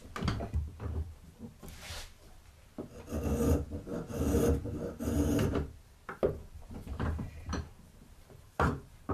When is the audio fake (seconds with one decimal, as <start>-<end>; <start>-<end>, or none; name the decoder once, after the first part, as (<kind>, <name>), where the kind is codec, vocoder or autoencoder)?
6.4-9.1 (vocoder, BigVGAN v2)